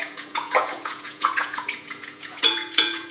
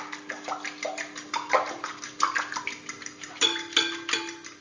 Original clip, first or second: second